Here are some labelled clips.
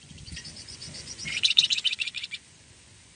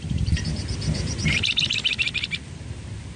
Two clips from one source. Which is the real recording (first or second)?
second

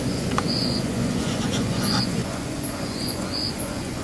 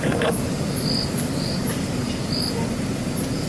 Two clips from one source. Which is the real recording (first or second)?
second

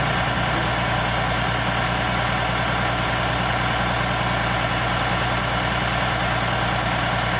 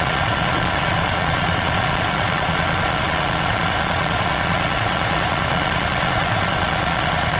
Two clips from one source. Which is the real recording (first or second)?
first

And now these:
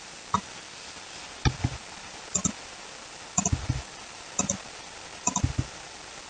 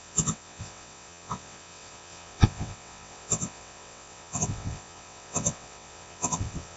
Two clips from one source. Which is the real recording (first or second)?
first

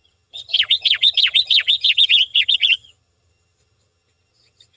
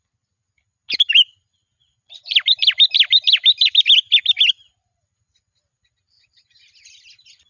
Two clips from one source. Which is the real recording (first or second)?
second